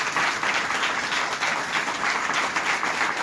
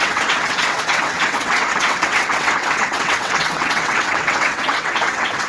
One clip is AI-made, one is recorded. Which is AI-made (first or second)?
second